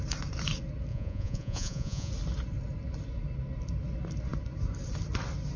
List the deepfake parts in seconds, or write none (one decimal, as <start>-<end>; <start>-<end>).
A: 0.9-2.1